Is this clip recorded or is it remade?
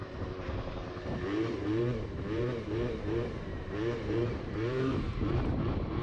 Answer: remade